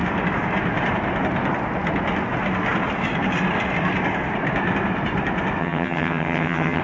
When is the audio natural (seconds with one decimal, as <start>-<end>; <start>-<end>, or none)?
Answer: 0.0-5.6